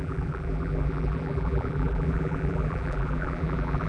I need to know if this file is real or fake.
fake